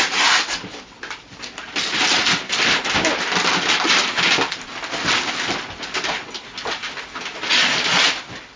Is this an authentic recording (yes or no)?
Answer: yes